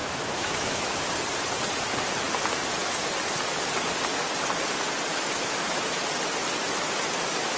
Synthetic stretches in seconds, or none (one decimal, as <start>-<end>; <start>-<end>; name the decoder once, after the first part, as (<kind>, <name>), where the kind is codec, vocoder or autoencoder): 0.0-1.1 (autoencoder, DAC-VAE); 5.1-6.0